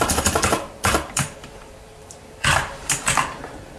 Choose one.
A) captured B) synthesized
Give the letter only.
B